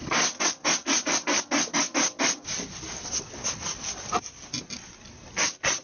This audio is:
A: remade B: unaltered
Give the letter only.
B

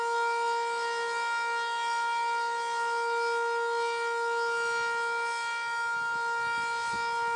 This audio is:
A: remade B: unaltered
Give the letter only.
B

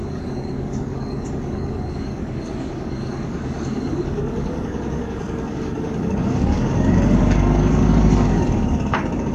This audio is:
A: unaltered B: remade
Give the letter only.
B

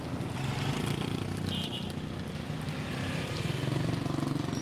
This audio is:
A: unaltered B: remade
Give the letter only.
A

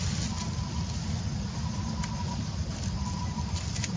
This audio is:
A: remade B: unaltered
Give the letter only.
B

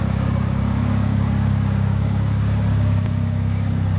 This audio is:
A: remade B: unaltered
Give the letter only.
A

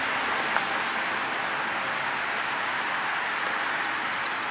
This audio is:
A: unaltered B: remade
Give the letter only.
A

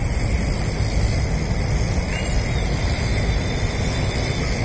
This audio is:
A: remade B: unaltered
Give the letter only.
B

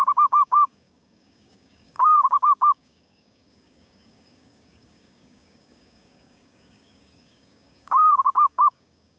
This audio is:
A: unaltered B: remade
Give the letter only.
B